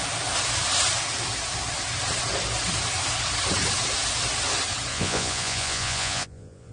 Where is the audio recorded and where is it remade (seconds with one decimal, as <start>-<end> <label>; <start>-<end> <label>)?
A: 0.0-4.9 recorded; 4.9-6.7 remade